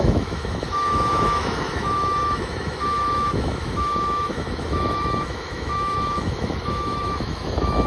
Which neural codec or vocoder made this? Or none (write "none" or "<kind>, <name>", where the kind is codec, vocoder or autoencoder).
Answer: autoencoder, DAC-VAE